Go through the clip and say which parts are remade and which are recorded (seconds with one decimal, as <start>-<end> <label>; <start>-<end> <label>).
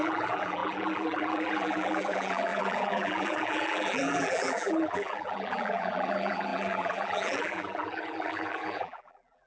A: 0.0-9.5 remade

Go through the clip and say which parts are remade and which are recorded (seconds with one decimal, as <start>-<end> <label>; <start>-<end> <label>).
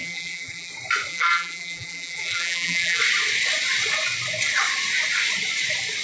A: 0.0-0.7 remade; 0.7-1.1 recorded; 1.1-3.0 remade; 3.0-6.0 recorded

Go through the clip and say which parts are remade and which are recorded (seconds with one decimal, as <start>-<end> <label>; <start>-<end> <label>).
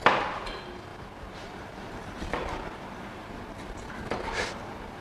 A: 0.0-0.9 recorded; 0.9-3.3 remade; 3.3-5.0 recorded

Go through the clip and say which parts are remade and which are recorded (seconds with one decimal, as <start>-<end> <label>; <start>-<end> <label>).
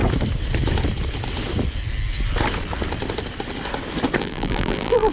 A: 0.0-4.2 recorded; 4.2-5.1 remade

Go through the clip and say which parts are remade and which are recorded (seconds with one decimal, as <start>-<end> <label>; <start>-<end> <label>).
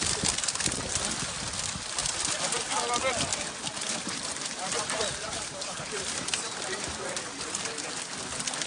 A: 0.0-2.0 recorded; 2.0-2.7 remade; 2.7-3.3 recorded; 3.3-7.5 remade; 7.5-8.7 recorded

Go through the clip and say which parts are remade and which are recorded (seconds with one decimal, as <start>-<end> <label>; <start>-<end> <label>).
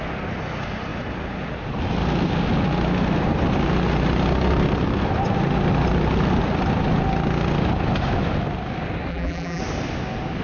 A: 0.0-9.1 recorded; 9.1-9.6 remade; 9.6-10.4 recorded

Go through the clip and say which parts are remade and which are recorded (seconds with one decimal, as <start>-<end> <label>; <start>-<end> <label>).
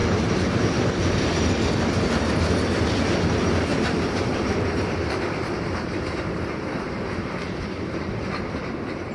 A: 0.0-1.5 remade; 1.5-3.7 recorded; 3.7-9.1 remade